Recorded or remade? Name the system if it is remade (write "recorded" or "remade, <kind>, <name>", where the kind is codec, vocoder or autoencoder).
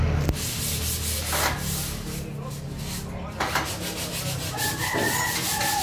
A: recorded